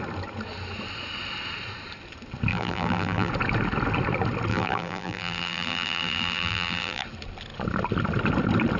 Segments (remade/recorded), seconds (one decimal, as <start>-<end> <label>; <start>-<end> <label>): 0.0-2.5 recorded; 2.5-3.3 remade; 3.3-4.5 recorded; 4.5-7.0 remade; 7.0-8.8 recorded